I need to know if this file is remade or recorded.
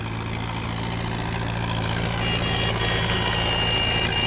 recorded